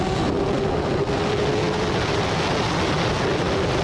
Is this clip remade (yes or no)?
no